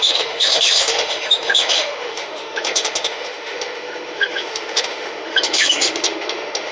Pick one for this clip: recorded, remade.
remade